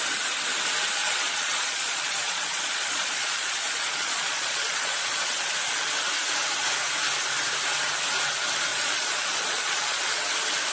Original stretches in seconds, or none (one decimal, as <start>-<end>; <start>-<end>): 0.0-1.0; 5.4-8.7; 10.2-10.7